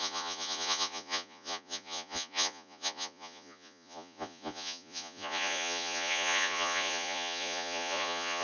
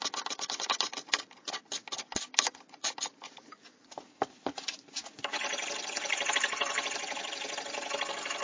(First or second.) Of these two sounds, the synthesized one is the first